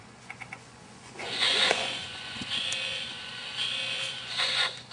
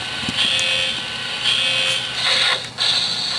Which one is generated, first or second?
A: first